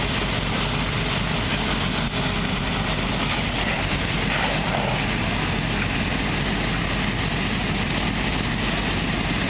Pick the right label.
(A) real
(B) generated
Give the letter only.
A